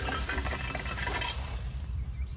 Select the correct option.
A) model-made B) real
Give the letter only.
A